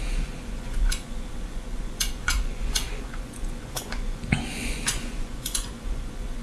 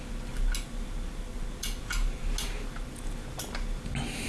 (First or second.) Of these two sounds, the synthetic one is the first